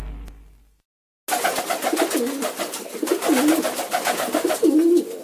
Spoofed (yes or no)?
no